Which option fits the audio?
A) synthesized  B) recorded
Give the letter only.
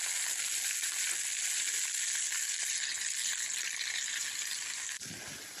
B